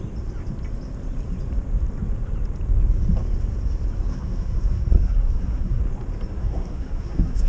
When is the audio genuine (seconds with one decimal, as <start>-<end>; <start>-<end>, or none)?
0.0-4.1; 5.8-6.4

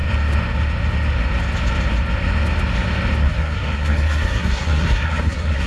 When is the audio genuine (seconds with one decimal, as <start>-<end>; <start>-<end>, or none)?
0.0-3.2

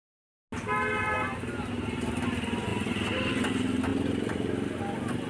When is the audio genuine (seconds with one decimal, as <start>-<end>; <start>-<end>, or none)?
0.0-5.3

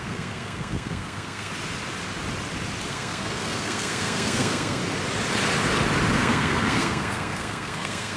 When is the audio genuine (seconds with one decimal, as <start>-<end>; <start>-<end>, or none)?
1.5-2.9; 4.8-6.1

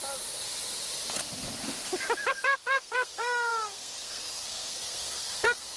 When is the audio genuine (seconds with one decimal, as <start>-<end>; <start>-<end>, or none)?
0.0-2.3

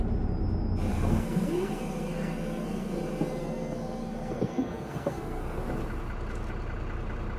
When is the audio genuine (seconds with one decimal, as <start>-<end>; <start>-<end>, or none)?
0.0-0.9; 3.0-3.4; 5.6-7.4

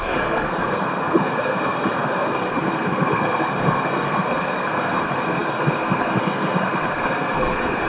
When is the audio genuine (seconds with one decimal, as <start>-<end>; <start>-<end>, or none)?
none